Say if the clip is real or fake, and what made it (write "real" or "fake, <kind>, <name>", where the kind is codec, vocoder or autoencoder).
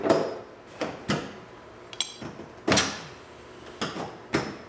real